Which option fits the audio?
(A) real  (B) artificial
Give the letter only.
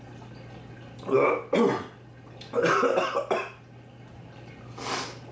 A